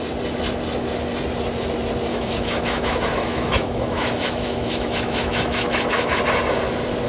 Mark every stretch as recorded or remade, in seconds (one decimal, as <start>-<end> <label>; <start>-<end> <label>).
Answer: 0.0-2.1 recorded; 2.1-6.2 remade; 6.2-7.1 recorded